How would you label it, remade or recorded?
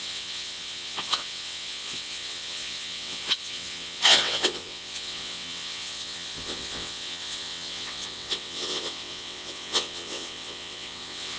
remade